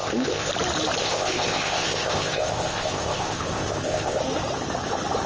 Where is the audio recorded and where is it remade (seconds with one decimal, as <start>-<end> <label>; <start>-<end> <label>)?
0.0-0.5 remade; 0.5-1.0 recorded; 1.0-4.2 remade; 4.2-5.3 recorded